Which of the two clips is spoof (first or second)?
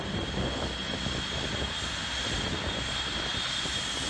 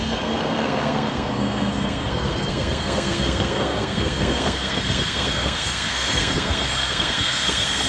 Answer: second